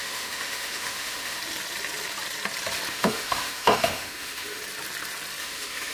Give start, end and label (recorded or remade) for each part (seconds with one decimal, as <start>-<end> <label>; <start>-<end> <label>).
0.0-1.4 remade; 1.4-2.9 recorded; 2.9-4.6 remade; 4.6-5.4 recorded; 5.4-5.9 remade